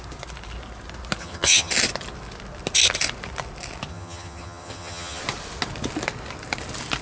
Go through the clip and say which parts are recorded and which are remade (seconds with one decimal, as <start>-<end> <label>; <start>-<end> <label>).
0.0-1.2 recorded; 1.2-1.7 remade; 1.7-3.9 recorded; 3.9-5.2 remade; 5.2-7.0 recorded